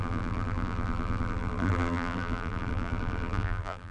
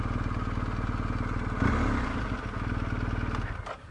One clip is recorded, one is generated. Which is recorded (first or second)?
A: second